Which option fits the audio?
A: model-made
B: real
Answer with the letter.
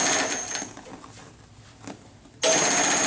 B